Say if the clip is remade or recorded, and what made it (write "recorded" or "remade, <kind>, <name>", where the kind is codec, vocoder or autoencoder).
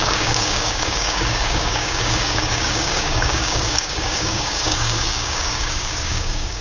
remade, codec, DAC